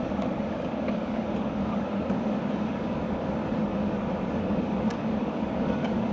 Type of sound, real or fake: fake